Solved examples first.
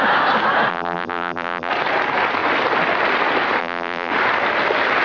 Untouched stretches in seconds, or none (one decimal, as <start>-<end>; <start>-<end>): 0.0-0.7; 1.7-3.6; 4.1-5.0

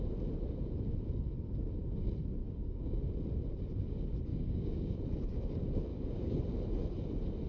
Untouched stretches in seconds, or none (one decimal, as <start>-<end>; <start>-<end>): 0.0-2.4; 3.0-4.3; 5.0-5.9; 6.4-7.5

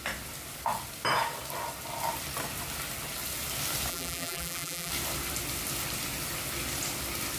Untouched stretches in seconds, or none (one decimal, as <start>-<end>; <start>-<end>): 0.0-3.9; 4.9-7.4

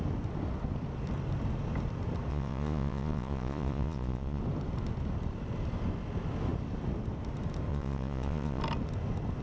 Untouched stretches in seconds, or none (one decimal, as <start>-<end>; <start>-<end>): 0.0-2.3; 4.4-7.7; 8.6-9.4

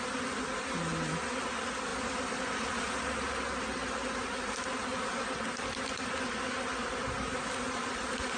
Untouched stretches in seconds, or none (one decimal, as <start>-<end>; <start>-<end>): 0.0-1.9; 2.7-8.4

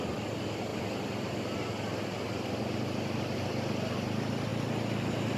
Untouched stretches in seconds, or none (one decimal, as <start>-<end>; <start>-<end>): 0.0-5.4